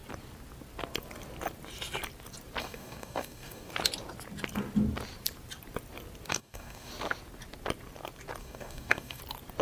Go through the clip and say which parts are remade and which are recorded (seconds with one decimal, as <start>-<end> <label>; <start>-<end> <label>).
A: 0.0-2.6 recorded; 2.6-3.7 remade; 3.7-6.3 recorded; 6.3-6.9 remade; 6.9-8.4 recorded; 8.4-9.2 remade; 9.2-9.6 recorded